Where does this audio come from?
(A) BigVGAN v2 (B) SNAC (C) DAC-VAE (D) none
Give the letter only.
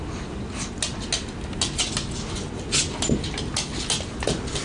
D